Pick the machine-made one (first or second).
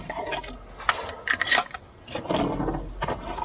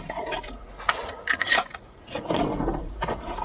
second